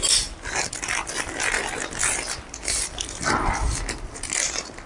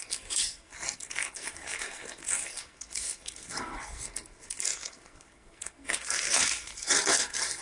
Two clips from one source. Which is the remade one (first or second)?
second